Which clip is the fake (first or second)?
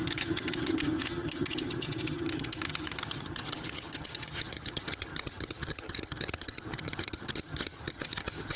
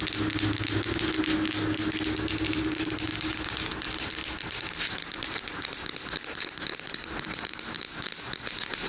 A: first